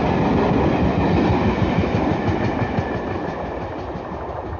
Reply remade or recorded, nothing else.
recorded